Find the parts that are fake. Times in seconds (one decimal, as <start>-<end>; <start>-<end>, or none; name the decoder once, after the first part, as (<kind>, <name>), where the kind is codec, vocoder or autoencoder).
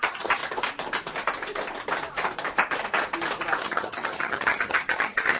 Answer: 0.0-0.4 (vocoder, HiFi-GAN); 3.6-5.4